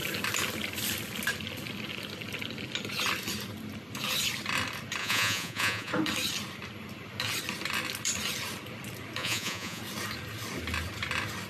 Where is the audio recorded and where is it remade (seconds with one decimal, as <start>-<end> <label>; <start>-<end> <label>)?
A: 0.0-5.0 recorded; 5.0-5.9 remade; 5.9-9.2 recorded; 9.2-9.8 remade; 9.8-11.5 recorded